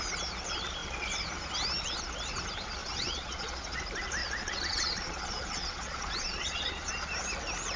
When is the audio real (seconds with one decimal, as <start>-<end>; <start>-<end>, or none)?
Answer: 0.0-2.8; 3.8-4.2; 7.1-7.8

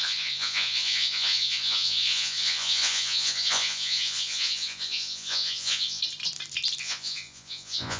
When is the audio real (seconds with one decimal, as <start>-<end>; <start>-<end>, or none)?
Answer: 6.0-6.8

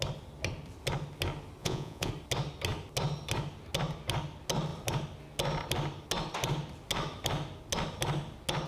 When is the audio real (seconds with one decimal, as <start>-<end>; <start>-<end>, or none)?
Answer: 0.0-1.6; 2.1-8.7

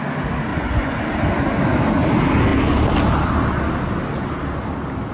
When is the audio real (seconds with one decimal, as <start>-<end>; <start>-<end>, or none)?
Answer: 0.0-0.5; 1.0-5.1

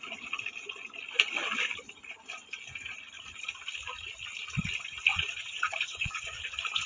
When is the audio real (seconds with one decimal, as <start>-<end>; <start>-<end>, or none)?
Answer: 0.0-5.1; 6.4-6.9

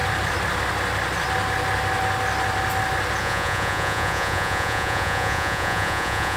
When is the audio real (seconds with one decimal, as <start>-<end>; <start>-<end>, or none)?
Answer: 0.0-3.2

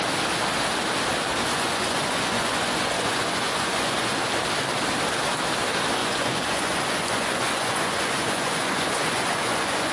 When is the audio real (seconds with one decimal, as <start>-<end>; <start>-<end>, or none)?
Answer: 0.0-1.5; 4.2-6.0

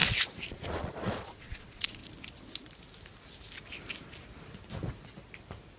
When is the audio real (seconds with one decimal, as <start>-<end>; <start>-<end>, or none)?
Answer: 0.0-0.5; 2.0-5.8